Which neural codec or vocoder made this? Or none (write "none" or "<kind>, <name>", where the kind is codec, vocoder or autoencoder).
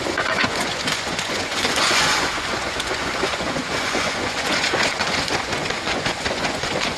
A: vocoder, Vocos